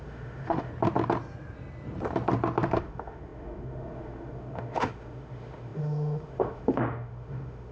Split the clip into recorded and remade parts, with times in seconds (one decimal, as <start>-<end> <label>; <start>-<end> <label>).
0.0-0.7 remade; 0.7-2.8 recorded; 2.8-7.7 remade